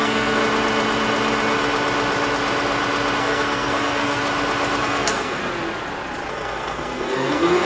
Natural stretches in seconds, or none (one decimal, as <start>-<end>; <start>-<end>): 0.4-3.2; 4.2-4.8; 5.4-6.3